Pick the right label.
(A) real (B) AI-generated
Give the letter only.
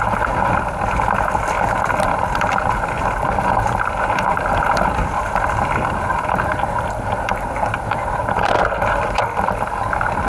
B